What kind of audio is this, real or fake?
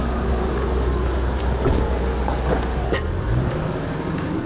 fake